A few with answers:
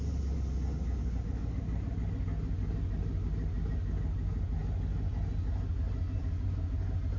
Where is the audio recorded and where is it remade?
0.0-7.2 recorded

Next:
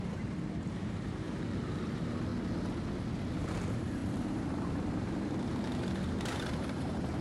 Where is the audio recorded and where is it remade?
0.0-2.3 remade; 2.3-3.3 recorded; 3.3-7.2 remade